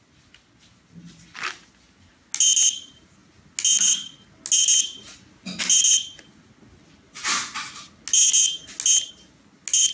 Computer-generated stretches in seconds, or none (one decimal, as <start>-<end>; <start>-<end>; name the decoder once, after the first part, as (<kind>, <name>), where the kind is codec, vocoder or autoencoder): none